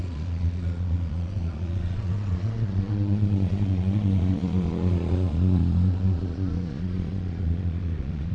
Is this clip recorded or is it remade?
remade